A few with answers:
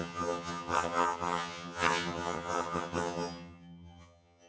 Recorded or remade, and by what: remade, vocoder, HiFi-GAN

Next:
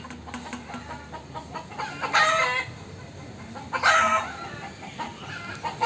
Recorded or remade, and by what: recorded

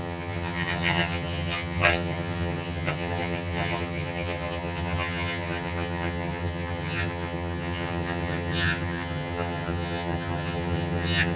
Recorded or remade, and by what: remade, vocoder, HiFi-GAN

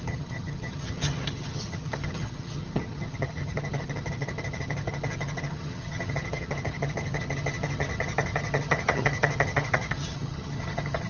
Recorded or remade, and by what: remade, vocoder, HiFi-GAN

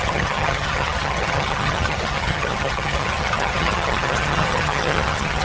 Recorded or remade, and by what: remade, vocoder, HiFi-GAN